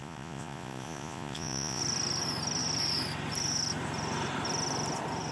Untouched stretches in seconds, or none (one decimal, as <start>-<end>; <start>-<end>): 1.8-5.3